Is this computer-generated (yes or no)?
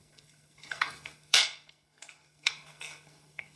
yes